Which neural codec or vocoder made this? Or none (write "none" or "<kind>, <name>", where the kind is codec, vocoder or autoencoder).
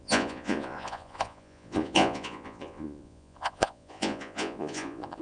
vocoder, Vocos